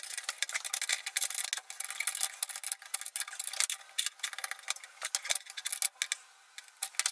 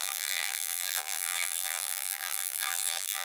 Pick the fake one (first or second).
second